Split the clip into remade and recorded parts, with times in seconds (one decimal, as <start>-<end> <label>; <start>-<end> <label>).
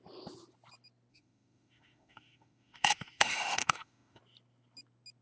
0.0-1.1 recorded; 1.1-4.2 remade; 4.2-5.2 recorded